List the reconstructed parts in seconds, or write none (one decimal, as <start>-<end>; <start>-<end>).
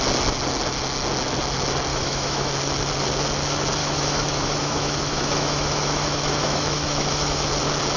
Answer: 1.9-2.5; 3.8-7.5